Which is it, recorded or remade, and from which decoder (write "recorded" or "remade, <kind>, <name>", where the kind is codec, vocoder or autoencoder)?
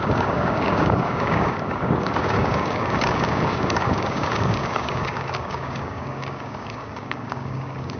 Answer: remade, codec, DAC